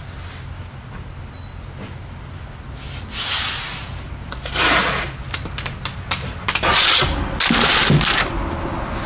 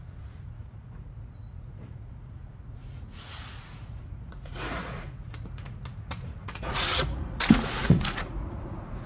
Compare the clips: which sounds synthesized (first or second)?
second